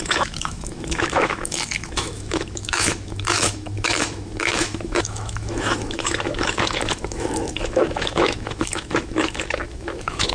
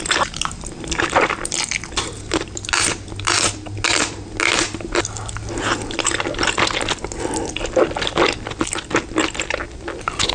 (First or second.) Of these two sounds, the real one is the second